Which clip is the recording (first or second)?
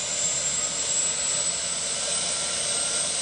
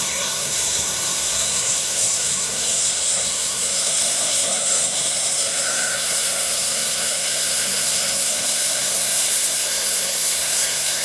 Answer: first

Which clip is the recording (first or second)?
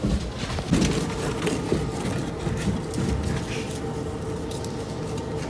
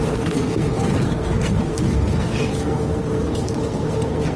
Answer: first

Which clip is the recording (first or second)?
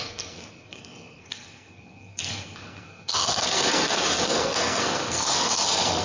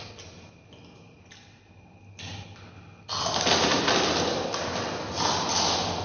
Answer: second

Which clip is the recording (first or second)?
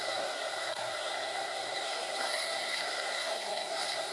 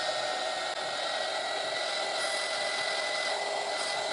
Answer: second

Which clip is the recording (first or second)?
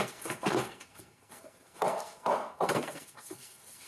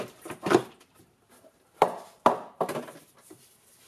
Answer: second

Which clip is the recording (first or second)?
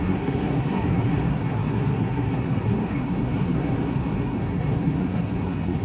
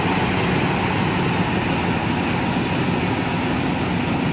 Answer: second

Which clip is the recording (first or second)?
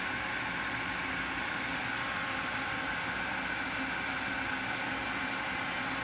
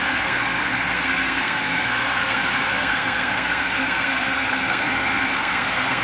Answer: first